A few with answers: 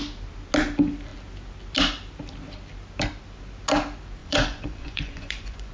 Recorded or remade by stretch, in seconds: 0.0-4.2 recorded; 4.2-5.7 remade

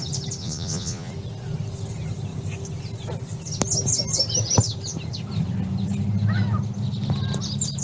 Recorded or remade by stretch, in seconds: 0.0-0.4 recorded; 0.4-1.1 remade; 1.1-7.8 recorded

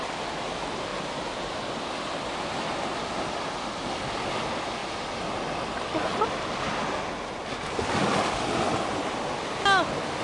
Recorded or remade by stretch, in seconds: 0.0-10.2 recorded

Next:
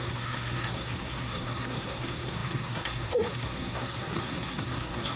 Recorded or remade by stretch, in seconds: 0.0-5.2 remade

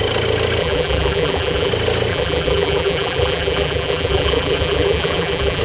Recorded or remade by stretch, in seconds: 0.0-0.6 recorded; 0.6-1.7 remade; 1.7-2.1 recorded; 2.1-5.6 remade

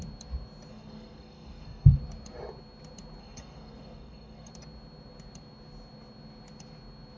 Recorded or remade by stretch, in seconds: 0.0-0.7 recorded; 0.7-2.0 remade; 2.0-3.2 recorded; 3.2-4.5 remade; 4.5-7.2 recorded